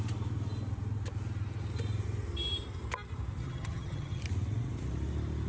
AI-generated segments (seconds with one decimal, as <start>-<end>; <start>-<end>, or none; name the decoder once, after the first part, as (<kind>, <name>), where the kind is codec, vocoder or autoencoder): 3.4-4.2 (vocoder, HiFi-GAN)